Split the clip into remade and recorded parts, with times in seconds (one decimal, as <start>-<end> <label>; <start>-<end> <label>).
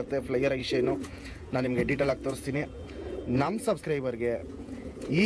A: 0.0-0.6 recorded; 0.6-3.8 remade; 3.8-4.4 recorded; 4.4-5.3 remade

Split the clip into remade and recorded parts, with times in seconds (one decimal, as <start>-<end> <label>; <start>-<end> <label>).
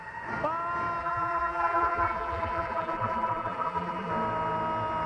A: 0.0-1.0 recorded; 1.0-4.1 remade; 4.1-5.1 recorded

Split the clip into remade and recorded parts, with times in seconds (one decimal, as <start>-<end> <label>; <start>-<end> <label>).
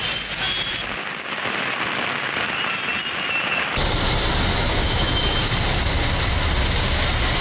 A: 0.0-4.5 recorded; 4.5-5.2 remade; 5.2-7.4 recorded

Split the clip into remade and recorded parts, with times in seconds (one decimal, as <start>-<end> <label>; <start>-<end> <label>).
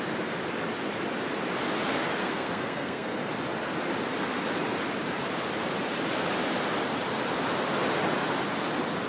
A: 0.0-2.2 recorded; 2.2-3.3 remade; 3.3-9.1 recorded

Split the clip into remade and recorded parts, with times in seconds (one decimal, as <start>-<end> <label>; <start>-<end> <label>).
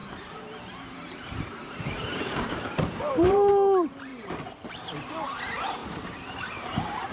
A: 0.0-3.5 remade; 3.5-5.8 recorded; 5.8-7.1 remade